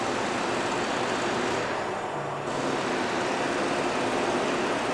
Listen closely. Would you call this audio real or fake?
real